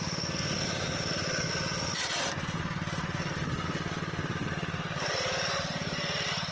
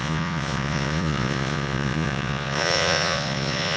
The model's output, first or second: second